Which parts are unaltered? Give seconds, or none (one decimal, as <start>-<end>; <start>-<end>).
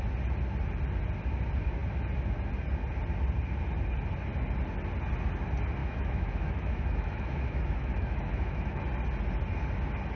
0.0-5.8; 8.8-10.2